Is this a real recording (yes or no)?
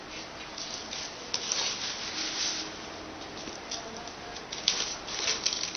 yes